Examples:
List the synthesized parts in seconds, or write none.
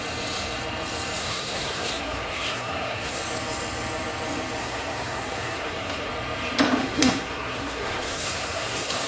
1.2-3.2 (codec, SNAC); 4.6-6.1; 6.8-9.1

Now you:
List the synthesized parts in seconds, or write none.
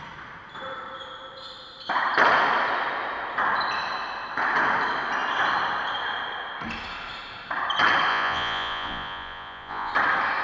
8.1-9.9 (vocoder, Vocos)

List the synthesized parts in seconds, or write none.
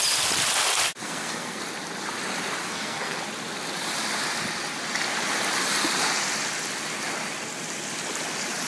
1.0-1.6 (codec, SNAC); 2.6-3.2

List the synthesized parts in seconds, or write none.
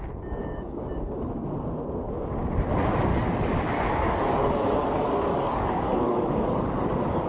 0.4-1.5 (codec, DAC); 3.1-7.3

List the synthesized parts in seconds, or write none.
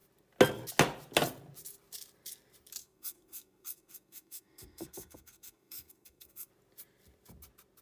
2.8-6.5 (codec, SNAC)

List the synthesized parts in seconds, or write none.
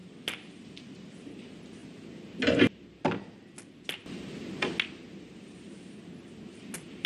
none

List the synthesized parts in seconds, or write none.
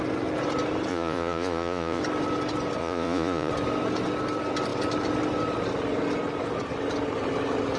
0.9-2.0 (vocoder, Vocos); 2.8-3.5